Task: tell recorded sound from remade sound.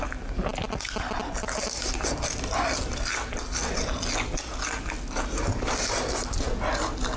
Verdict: recorded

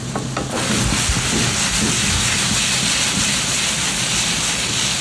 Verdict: recorded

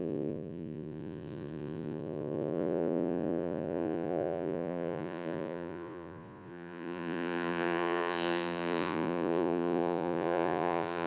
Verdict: remade